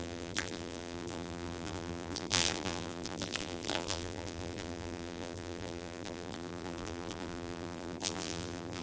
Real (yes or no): no